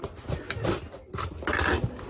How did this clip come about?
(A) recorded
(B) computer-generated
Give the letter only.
A